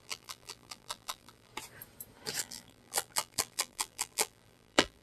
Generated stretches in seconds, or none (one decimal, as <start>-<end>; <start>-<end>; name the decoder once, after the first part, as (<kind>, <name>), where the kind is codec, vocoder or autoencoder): 0.0-1.5 (vocoder, BigVGAN v2); 2.4-5.0